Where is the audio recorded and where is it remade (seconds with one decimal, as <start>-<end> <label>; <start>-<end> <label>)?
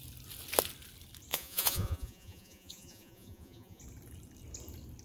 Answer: 0.0-1.3 recorded; 1.3-3.8 remade; 3.8-5.0 recorded